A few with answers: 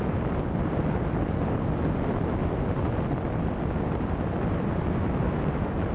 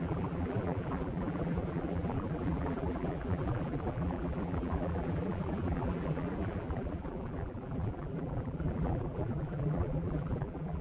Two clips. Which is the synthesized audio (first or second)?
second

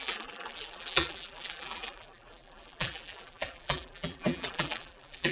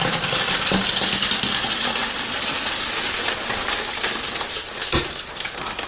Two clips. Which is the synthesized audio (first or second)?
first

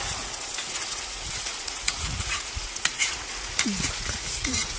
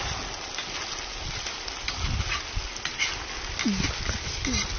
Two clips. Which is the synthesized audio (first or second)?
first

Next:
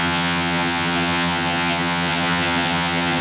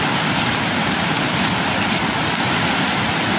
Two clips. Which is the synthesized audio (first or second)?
first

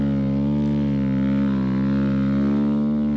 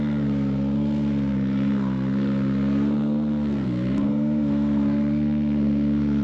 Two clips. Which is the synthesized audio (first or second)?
second